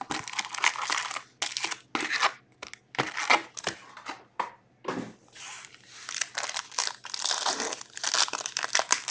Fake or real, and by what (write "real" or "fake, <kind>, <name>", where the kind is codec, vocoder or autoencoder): real